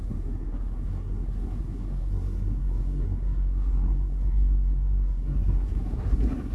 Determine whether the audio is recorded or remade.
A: remade